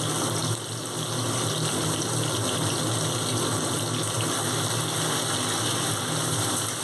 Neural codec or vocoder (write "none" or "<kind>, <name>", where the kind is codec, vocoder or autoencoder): none